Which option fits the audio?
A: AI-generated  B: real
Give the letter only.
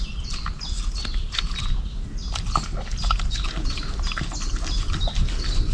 B